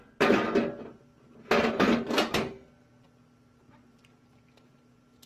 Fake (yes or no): no